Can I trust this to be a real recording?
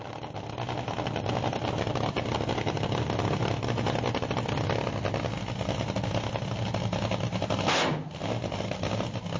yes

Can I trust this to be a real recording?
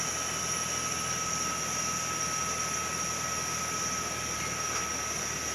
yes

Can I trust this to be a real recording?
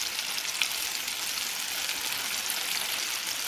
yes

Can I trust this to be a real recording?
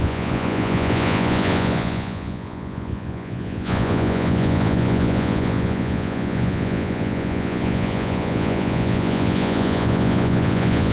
no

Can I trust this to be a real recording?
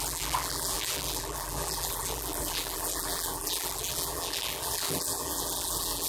no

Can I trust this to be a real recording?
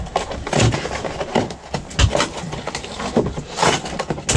yes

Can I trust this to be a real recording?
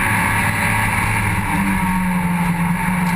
yes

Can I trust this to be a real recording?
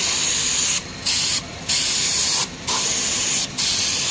yes